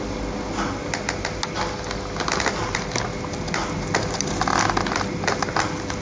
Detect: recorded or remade recorded